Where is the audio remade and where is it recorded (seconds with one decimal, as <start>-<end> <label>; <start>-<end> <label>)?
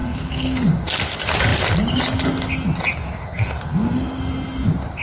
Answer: 0.0-0.6 remade; 0.6-3.0 recorded; 3.0-4.2 remade; 4.2-5.0 recorded